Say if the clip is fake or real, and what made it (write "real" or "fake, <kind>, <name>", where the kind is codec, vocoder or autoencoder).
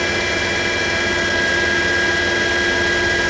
real